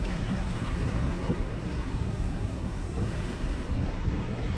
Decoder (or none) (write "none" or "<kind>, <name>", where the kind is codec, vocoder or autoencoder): codec, SNAC